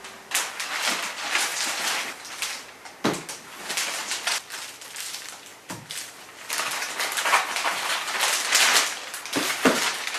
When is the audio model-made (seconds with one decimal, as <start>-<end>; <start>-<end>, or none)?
none